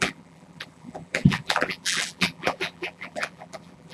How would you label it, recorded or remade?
remade